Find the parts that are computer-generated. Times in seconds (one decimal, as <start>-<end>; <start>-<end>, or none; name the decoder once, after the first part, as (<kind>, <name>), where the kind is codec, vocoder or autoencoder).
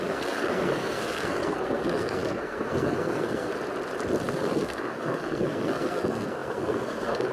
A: 0.0-3.5 (codec, SNAC); 4.3-7.3